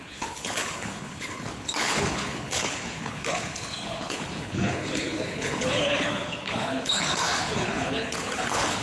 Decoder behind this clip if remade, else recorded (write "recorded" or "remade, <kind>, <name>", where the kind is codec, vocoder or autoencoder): remade, codec, HILCodec